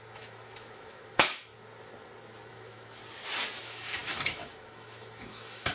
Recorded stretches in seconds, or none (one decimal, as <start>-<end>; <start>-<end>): 1.5-2.5; 3.0-3.6